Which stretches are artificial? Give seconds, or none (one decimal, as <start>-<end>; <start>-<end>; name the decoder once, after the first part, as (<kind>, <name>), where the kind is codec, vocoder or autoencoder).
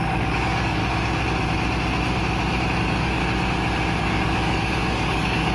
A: 0.0-0.8 (codec, DAC); 2.8-3.2; 4.0-5.5